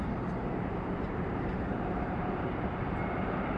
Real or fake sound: fake